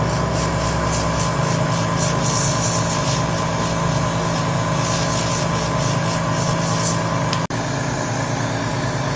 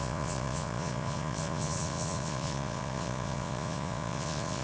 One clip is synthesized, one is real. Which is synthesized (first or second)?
second